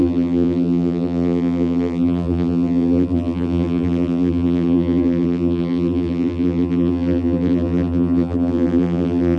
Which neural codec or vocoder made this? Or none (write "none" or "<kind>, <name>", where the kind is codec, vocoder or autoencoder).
vocoder, BigVGAN v2